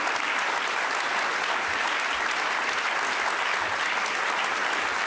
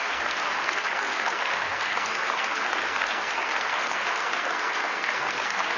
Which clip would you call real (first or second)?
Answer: first